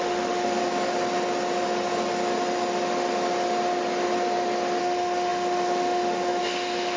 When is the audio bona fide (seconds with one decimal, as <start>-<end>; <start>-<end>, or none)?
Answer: 0.6-4.8